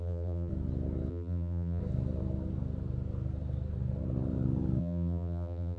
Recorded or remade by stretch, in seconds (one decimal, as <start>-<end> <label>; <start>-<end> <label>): 0.0-0.5 remade; 0.5-1.1 recorded; 1.1-1.8 remade; 1.8-4.8 recorded; 4.8-5.8 remade